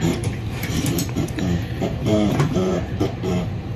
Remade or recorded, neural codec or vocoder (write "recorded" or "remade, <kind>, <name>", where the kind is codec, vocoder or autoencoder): remade, vocoder, BigVGAN v2